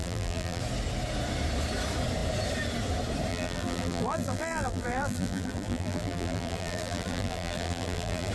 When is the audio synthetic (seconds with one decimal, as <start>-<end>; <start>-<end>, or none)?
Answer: 0.0-0.6; 3.3-8.3